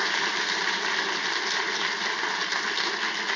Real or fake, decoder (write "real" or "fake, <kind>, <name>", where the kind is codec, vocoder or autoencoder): real